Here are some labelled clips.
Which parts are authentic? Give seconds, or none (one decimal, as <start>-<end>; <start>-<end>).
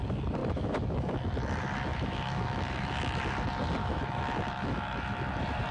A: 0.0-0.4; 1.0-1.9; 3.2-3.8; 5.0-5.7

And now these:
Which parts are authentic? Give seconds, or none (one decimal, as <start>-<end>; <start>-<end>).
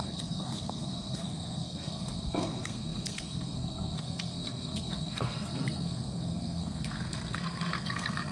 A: none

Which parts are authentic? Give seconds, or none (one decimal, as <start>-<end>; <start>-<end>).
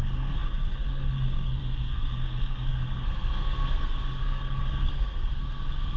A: none